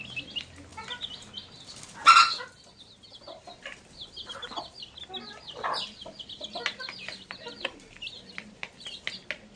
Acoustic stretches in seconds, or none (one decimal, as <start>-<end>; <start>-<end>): 0.0-9.6